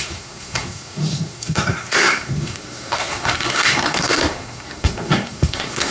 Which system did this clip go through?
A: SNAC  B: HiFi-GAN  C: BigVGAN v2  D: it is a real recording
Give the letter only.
A